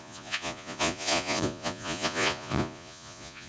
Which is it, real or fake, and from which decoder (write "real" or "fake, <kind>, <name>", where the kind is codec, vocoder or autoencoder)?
fake, vocoder, Vocos